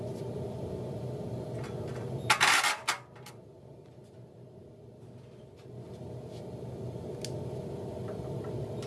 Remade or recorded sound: recorded